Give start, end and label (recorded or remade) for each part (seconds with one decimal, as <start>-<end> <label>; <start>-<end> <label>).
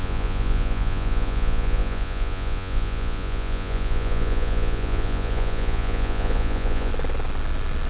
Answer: 0.0-6.9 remade; 6.9-7.9 recorded